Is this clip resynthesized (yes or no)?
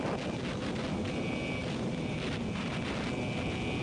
no